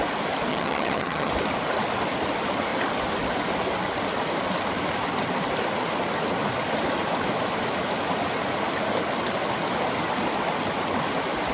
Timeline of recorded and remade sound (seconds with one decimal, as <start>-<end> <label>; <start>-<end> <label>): 0.0-0.5 recorded; 0.5-1.3 remade; 1.3-11.5 recorded